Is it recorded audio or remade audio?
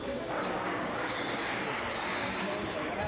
remade